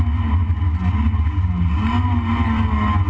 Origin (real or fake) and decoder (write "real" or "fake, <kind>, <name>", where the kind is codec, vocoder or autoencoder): real